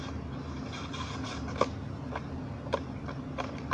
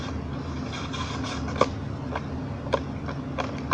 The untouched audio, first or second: second